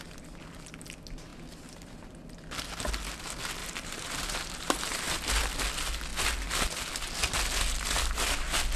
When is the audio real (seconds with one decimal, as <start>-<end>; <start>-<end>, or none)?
0.0-3.6; 5.0-8.8